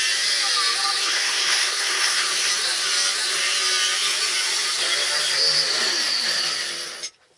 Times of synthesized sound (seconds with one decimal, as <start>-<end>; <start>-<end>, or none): 1.0-2.5